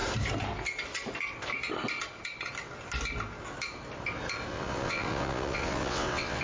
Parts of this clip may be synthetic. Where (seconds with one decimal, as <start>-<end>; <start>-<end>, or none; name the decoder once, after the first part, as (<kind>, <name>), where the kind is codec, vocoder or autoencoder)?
4.5-6.4 (vocoder, WaveNeXt)